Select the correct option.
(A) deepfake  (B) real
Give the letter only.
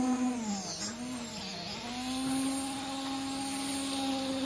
B